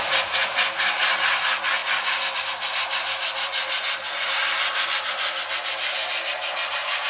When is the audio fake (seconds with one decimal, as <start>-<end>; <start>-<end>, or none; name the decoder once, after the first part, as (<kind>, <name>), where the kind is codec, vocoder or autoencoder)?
none